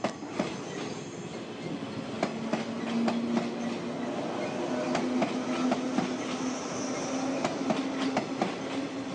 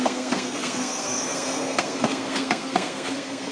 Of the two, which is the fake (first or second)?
second